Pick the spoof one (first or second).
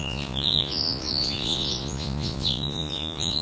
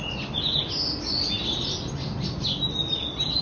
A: first